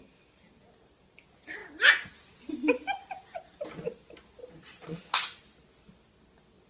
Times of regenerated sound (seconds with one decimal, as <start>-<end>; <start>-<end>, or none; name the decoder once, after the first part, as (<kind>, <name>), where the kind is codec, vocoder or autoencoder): 4.4-5.4 (vocoder, Vocos)